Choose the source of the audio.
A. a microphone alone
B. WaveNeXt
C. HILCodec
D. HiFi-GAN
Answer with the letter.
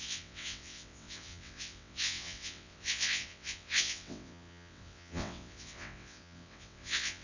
B